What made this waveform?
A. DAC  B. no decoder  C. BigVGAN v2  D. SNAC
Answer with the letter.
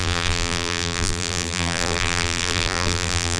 C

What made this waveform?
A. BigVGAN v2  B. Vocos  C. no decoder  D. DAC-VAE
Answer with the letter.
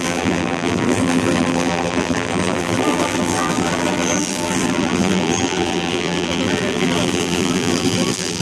A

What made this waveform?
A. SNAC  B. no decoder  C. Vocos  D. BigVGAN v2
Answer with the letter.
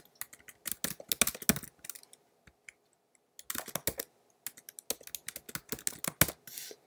B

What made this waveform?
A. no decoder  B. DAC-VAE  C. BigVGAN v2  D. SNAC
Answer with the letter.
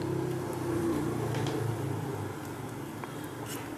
A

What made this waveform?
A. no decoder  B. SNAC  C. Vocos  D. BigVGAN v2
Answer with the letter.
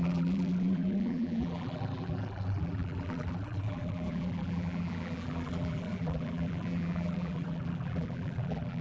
D